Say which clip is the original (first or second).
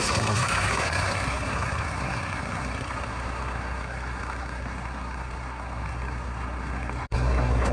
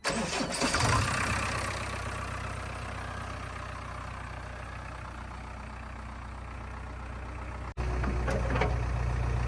second